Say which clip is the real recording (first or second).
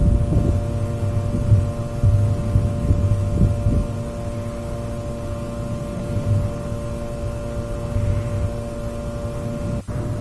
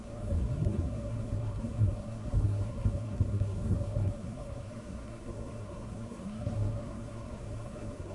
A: first